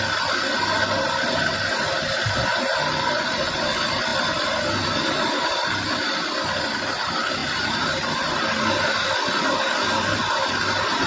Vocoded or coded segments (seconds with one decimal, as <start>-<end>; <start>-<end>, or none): 7.4-10.2